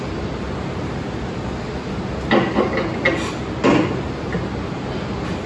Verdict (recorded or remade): recorded